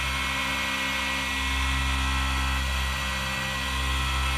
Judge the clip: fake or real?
real